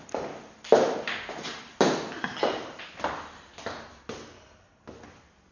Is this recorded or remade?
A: recorded